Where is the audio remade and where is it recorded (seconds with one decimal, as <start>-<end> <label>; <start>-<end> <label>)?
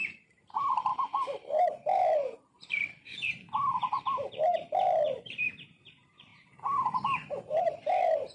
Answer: 0.0-8.3 remade